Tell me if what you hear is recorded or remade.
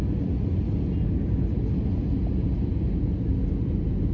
recorded